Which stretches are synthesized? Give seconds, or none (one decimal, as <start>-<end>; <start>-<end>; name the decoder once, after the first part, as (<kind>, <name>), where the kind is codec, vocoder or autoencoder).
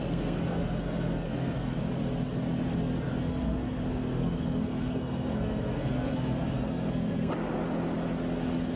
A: 0.0-1.8 (codec, SNAC); 3.2-7.3